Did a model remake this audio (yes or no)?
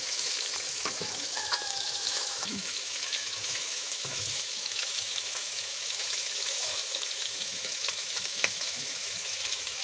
yes